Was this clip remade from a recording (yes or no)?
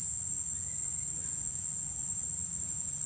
yes